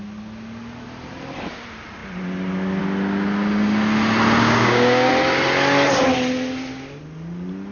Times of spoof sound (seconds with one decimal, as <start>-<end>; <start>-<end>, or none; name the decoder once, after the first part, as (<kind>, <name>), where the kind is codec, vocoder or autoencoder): 4.4-5.1 (codec, DAC)